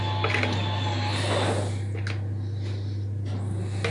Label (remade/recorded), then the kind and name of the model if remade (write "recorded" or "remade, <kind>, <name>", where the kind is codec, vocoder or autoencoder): recorded